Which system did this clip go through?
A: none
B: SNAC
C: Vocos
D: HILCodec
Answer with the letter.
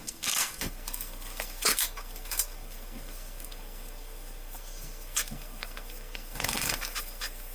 B